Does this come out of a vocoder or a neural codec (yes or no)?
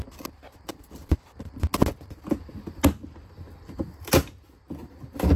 no